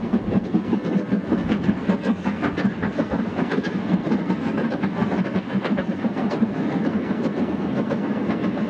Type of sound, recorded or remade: remade